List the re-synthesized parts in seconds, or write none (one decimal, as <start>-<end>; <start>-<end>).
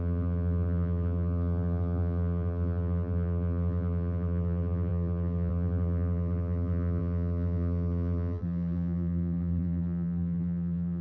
0.0-11.0